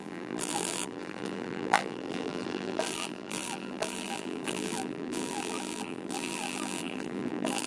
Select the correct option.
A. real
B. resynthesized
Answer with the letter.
B